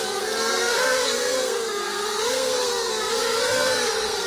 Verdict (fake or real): fake